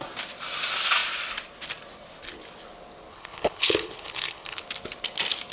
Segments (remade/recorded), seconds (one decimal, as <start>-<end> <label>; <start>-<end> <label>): 0.0-3.1 recorded; 3.1-4.6 remade; 4.6-5.5 recorded